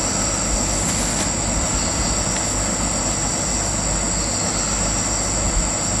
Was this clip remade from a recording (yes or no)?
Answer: no